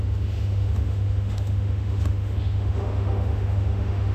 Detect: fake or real fake